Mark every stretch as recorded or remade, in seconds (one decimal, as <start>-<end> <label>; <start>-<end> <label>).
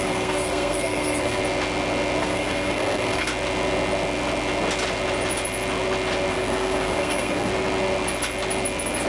0.0-1.4 remade; 1.4-2.2 recorded; 2.2-3.3 remade; 3.3-6.3 recorded; 6.3-7.5 remade; 7.5-9.1 recorded